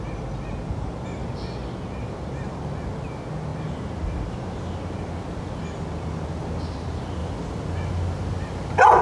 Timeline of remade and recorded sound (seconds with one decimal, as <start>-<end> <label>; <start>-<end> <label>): 0.0-9.0 recorded